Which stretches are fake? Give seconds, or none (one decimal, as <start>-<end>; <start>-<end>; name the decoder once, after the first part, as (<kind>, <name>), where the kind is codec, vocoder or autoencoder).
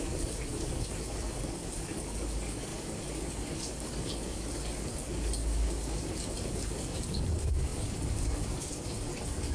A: 0.0-9.5 (codec, DAC)